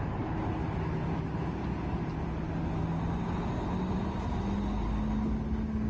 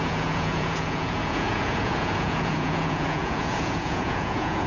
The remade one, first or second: second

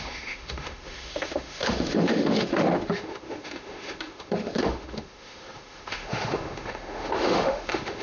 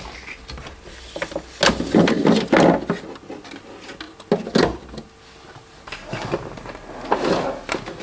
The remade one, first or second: first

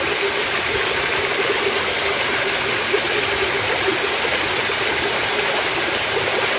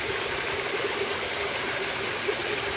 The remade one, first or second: second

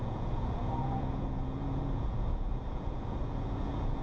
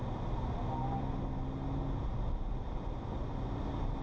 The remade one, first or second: first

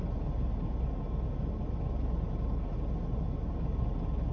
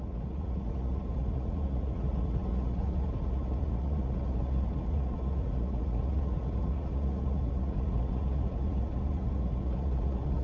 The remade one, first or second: second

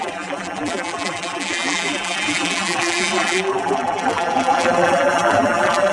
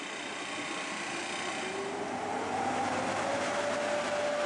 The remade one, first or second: first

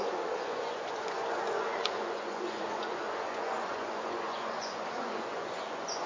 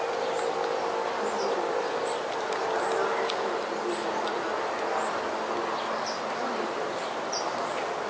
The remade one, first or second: first